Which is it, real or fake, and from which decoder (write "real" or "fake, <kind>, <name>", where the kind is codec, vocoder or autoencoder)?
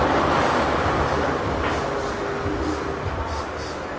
real